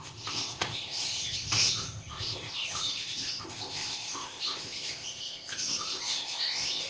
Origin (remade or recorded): remade